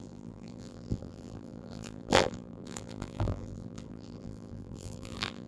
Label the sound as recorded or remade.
remade